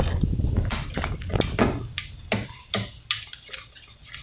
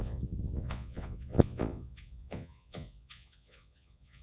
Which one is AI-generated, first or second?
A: second